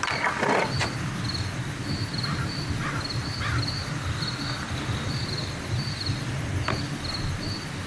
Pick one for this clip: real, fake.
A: real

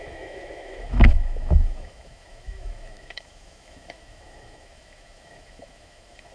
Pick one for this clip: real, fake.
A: fake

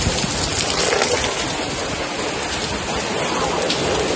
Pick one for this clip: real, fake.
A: real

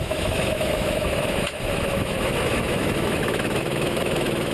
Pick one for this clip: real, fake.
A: fake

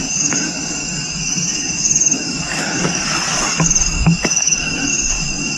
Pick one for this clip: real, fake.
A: fake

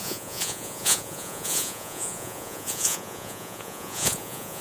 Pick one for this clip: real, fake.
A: fake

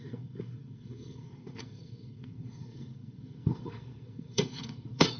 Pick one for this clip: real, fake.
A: fake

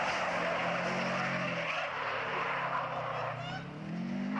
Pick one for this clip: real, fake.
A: real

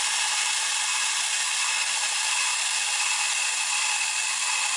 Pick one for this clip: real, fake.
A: real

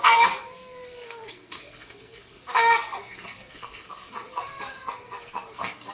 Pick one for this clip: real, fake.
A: fake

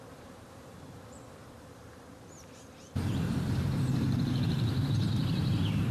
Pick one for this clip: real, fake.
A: fake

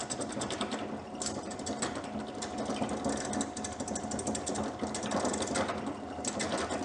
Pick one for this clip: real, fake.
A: real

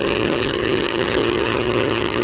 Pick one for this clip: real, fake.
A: fake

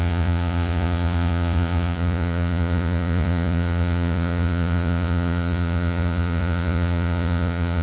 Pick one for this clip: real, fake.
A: fake